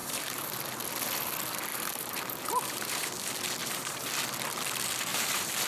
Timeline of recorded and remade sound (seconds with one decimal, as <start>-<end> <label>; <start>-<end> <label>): 0.0-0.6 remade; 0.6-1.7 recorded; 1.7-3.1 remade; 3.1-3.6 recorded; 3.6-4.1 remade; 4.1-5.1 recorded; 5.1-5.7 remade